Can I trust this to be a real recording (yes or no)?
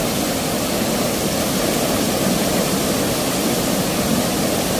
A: yes